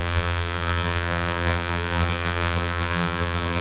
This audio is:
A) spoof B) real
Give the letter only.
A